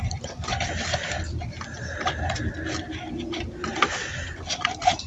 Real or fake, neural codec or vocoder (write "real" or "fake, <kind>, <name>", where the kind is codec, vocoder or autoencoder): real